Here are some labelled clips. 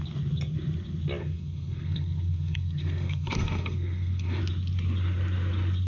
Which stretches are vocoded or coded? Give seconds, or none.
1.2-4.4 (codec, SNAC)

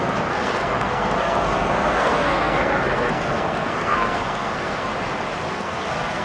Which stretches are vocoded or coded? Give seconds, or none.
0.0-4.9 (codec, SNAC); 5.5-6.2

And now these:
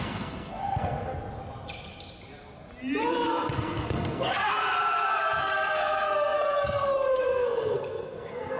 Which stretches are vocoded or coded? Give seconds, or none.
0.0-1.1 (codec, SNAC); 3.0-4.6; 5.4-8.6